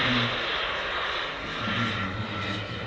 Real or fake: real